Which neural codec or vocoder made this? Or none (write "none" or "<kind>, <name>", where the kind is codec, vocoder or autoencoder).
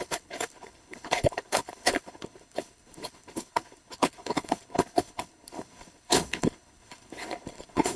codec, HILCodec